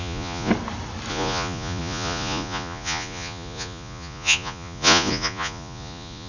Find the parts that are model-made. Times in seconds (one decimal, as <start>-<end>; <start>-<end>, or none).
0.0-0.5; 1.1-6.3